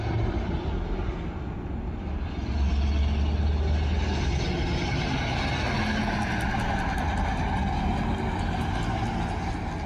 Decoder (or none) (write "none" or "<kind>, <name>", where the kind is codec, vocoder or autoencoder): none